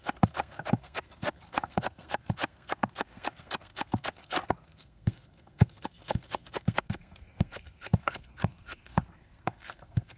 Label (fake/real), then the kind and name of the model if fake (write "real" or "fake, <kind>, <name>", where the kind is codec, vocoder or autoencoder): fake, codec, SNAC